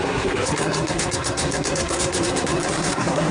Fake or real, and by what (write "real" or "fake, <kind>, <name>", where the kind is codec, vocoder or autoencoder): fake, codec, SNAC